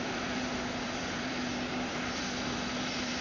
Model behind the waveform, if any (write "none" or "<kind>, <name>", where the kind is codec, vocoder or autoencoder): vocoder, BigVGAN v2